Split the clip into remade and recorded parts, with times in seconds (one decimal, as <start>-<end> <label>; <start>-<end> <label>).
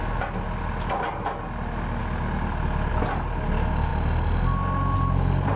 0.0-5.6 recorded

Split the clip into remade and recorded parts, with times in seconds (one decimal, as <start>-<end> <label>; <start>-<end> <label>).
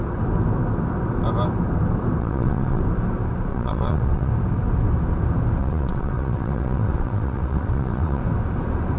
0.0-2.2 recorded; 2.2-2.8 remade; 2.8-3.5 recorded; 3.5-4.3 remade; 4.3-5.6 recorded; 5.6-8.2 remade; 8.2-9.0 recorded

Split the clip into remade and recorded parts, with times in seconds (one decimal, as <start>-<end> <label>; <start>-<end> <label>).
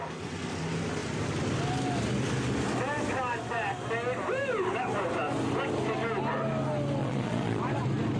0.0-7.0 recorded; 7.0-7.6 remade; 7.6-8.2 recorded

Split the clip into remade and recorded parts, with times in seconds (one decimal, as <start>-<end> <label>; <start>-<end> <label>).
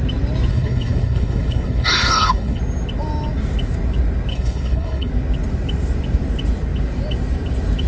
0.0-0.5 recorded; 0.5-2.6 remade; 2.6-4.3 recorded; 4.3-5.1 remade; 5.1-7.9 recorded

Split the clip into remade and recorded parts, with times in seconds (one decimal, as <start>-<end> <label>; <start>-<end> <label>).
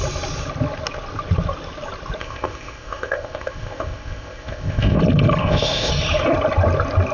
0.0-2.2 recorded; 2.2-5.0 remade; 5.0-5.4 recorded; 5.4-5.9 remade; 5.9-7.1 recorded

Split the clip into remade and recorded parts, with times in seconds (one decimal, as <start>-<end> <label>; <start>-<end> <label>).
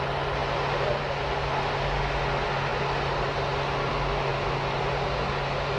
0.0-5.8 recorded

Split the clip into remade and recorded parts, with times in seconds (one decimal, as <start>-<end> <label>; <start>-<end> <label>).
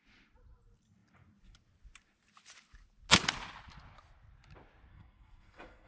0.0-4.9 recorded; 4.9-5.9 remade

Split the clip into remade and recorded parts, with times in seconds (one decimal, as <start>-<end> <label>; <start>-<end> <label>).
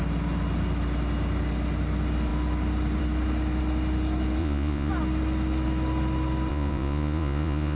0.0-4.4 recorded; 4.4-4.9 remade; 4.9-6.5 recorded; 6.5-7.8 remade